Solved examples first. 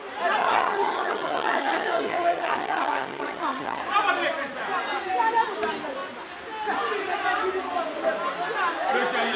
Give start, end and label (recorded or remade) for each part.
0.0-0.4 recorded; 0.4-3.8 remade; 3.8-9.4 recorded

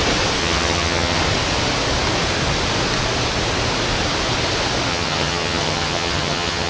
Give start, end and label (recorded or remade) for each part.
0.0-0.4 recorded; 0.4-1.2 remade; 1.2-4.9 recorded; 4.9-6.7 remade

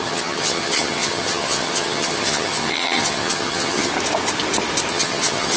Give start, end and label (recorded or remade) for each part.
0.0-3.9 remade; 3.9-4.9 recorded; 4.9-5.6 remade

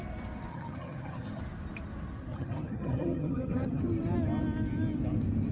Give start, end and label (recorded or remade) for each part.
0.0-0.5 recorded; 0.5-1.4 remade; 1.4-2.3 recorded; 2.3-3.8 remade; 3.8-5.5 recorded

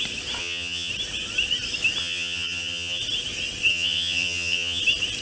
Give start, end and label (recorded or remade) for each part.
0.0-0.4 recorded; 0.4-0.9 remade; 0.9-2.0 recorded; 2.0-3.0 remade; 3.0-3.7 recorded; 3.7-4.8 remade; 4.8-5.2 recorded

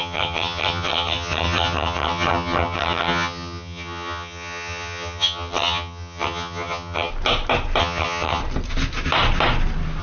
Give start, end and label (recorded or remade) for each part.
0.0-7.1 remade; 7.1-7.8 recorded; 7.8-8.4 remade; 8.4-10.0 recorded